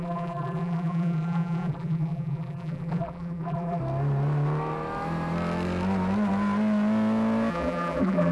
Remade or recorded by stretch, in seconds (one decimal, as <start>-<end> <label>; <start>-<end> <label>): 0.0-3.8 remade; 3.8-7.5 recorded; 7.5-8.3 remade